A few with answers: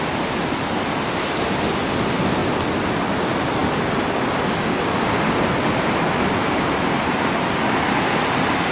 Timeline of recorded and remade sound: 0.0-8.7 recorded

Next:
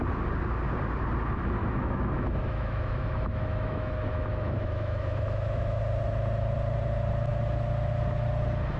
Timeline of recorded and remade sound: 0.0-1.6 recorded; 1.6-5.8 remade; 5.8-8.8 recorded

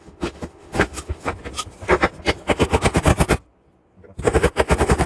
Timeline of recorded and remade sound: 0.0-1.3 remade; 1.3-2.5 recorded; 2.5-3.1 remade; 3.1-4.2 recorded; 4.2-5.1 remade

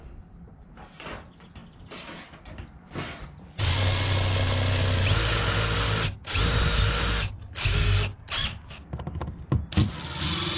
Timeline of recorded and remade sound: 0.0-10.6 recorded

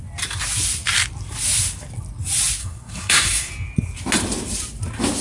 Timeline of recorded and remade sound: 0.0-2.6 recorded; 2.6-3.5 remade; 3.5-5.2 recorded